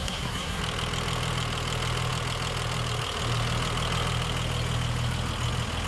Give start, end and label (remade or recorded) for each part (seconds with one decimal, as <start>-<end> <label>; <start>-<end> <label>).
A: 0.0-0.6 remade; 0.6-5.9 recorded